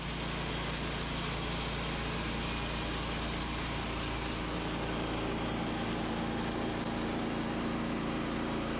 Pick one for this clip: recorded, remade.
recorded